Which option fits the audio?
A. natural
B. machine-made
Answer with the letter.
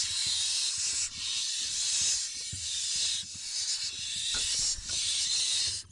A